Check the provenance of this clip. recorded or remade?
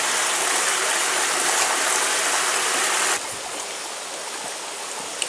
recorded